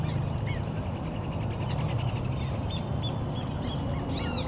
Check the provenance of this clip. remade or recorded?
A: recorded